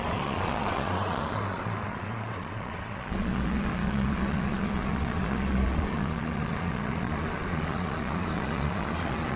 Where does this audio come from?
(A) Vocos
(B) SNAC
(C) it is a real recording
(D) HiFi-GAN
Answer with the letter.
A